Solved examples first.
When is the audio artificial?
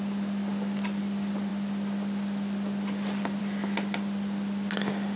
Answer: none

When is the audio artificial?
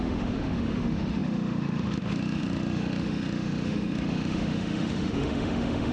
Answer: 0.0-5.9 (autoencoder, DAC-VAE)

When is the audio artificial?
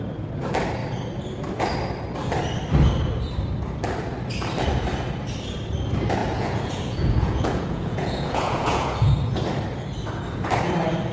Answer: 6.2-9.1 (vocoder, Vocos)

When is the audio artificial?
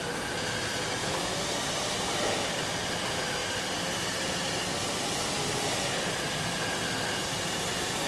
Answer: 1.0-2.9 (vocoder, BigVGAN v2); 3.4-4.3; 4.7-5.9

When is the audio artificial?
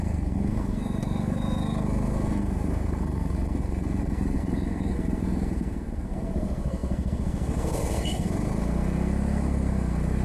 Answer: 0.0-10.2 (codec, SNAC)